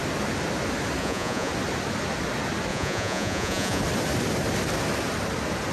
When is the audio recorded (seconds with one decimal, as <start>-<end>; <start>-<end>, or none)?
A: 0.0-1.0; 1.5-2.7; 3.8-5.7